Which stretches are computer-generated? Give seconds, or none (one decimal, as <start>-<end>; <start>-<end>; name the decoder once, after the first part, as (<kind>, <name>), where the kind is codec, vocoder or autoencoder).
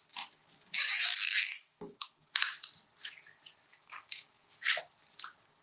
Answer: 0.9-2.5 (autoencoder, DAC-VAE); 3.7-4.8